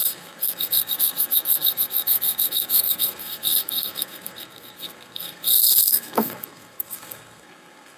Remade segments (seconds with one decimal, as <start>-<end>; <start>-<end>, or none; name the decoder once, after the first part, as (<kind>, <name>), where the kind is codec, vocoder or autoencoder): 0.0-8.0 (codec, SNAC)